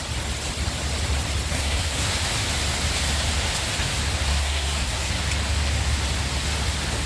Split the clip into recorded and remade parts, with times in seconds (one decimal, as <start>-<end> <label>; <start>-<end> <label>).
0.0-1.5 recorded; 1.5-2.1 remade; 2.1-4.3 recorded; 4.3-5.1 remade; 5.1-7.1 recorded

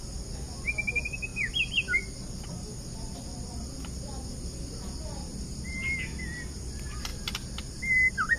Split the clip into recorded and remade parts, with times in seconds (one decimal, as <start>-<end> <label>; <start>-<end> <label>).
0.0-8.4 recorded

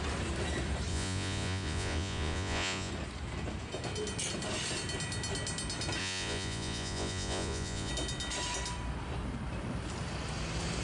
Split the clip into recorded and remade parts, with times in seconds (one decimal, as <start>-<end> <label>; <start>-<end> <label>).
0.0-0.9 recorded; 0.9-2.9 remade; 2.9-6.0 recorded; 6.0-7.9 remade; 7.9-10.8 recorded

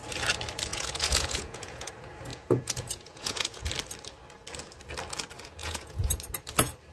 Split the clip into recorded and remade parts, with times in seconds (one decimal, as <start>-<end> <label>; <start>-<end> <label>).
0.0-0.7 recorded; 0.7-1.9 remade; 1.9-2.3 recorded; 2.3-3.7 remade; 3.7-5.6 recorded; 5.6-6.2 remade; 6.2-6.9 recorded

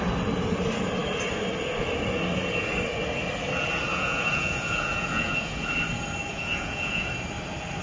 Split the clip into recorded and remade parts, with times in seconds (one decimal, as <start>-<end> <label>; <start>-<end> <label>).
0.0-3.9 recorded; 3.9-5.7 remade; 5.7-6.3 recorded; 6.3-7.1 remade; 7.1-7.8 recorded

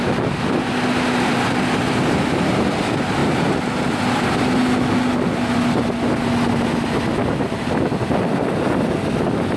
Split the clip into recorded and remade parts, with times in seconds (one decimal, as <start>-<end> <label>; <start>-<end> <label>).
0.0-9.6 recorded

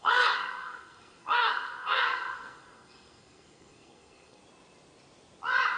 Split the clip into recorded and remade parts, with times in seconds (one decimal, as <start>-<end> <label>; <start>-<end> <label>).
0.0-4.4 remade; 4.4-5.8 recorded

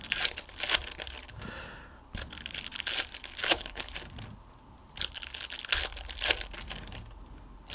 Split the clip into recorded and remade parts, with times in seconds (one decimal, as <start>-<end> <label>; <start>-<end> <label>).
0.0-3.4 recorded; 3.4-4.0 remade; 4.0-7.7 recorded